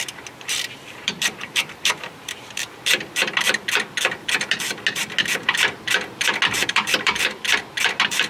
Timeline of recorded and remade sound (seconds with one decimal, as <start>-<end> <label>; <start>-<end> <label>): 0.0-0.5 recorded; 0.5-2.6 remade; 2.6-6.6 recorded; 6.6-7.4 remade; 7.4-8.3 recorded